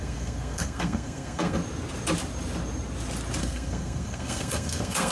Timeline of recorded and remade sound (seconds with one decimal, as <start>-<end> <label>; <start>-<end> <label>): 0.0-1.6 remade; 1.6-3.4 recorded; 3.4-5.1 remade